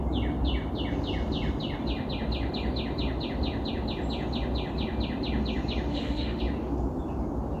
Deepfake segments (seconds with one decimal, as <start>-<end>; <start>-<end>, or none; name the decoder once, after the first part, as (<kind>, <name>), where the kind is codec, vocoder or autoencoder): 5.9-6.4 (autoencoder, DAC-VAE)